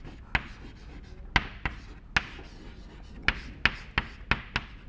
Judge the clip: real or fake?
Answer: real